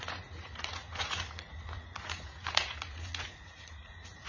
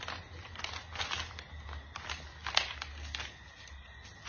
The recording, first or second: second